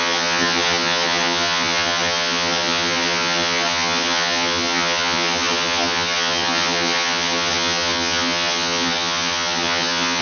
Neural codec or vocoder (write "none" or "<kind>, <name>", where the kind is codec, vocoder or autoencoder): vocoder, HiFi-GAN